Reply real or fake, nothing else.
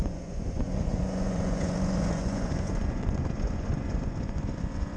fake